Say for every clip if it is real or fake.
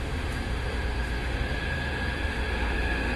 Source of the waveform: fake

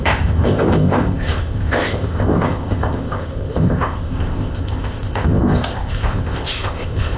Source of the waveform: fake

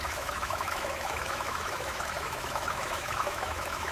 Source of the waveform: fake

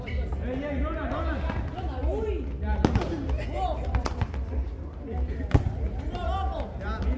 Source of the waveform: real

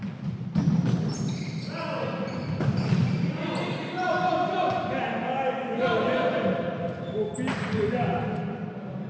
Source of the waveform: real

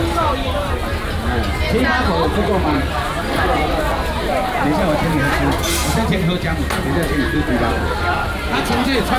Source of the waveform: real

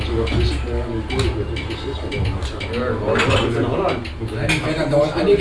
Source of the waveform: real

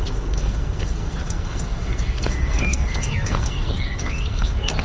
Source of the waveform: fake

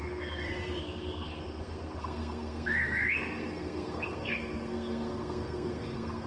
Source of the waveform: fake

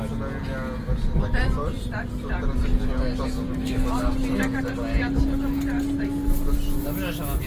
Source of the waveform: real